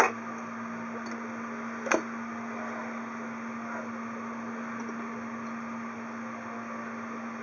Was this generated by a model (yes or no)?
no